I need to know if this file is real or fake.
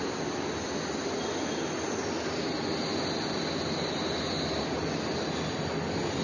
real